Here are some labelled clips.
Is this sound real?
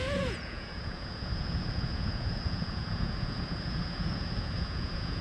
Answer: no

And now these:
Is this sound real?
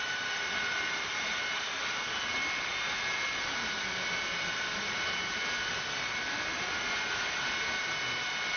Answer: yes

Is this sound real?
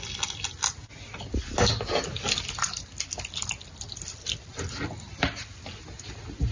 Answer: yes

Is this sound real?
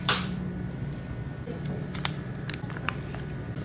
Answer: no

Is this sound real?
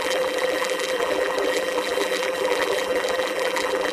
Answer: no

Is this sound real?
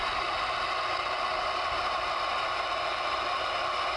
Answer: yes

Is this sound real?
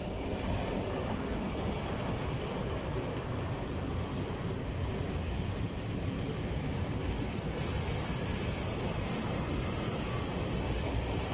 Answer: yes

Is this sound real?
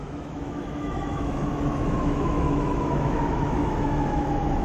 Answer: no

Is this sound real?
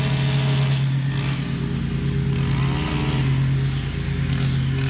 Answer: yes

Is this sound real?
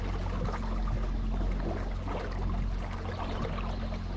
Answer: yes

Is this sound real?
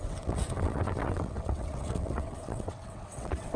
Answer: no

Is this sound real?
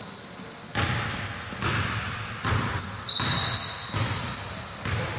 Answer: yes